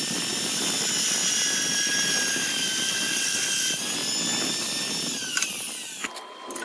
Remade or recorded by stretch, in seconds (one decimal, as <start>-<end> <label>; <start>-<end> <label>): 0.0-1.2 remade; 1.2-2.1 recorded; 2.1-6.6 remade